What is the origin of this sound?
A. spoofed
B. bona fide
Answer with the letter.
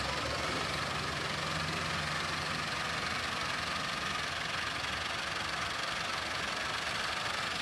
B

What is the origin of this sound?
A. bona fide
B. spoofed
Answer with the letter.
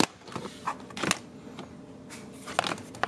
A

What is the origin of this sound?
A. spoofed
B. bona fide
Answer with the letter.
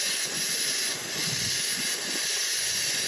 A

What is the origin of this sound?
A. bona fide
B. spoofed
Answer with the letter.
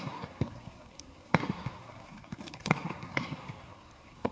B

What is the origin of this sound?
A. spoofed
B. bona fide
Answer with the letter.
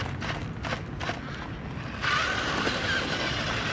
B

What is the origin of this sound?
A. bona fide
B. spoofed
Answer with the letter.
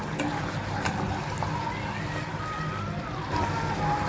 A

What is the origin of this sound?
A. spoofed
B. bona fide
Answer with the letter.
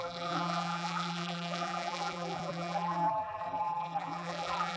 A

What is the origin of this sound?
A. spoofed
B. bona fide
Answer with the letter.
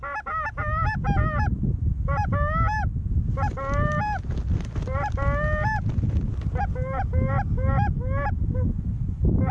B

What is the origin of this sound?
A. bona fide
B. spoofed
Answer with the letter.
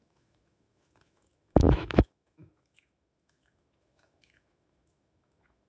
B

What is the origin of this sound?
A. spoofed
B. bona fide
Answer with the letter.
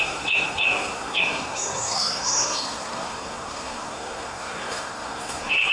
A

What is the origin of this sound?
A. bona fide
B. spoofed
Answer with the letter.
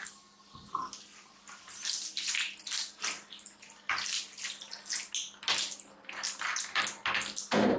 A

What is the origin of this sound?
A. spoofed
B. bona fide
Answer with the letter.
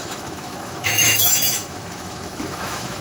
A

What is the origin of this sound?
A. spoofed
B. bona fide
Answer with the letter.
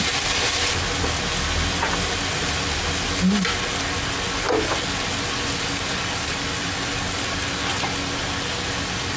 B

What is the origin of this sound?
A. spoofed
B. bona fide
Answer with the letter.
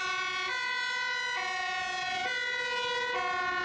B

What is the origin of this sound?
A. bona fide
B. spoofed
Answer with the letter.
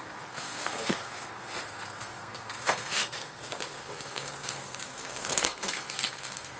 B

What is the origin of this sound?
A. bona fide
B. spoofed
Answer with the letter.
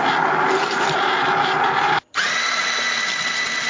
A